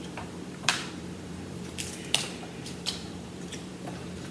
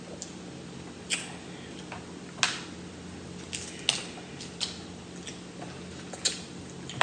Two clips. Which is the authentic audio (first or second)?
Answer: second